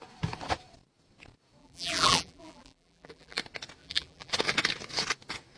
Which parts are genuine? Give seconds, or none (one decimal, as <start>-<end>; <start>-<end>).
0.0-1.6; 3.4-3.8; 4.3-5.6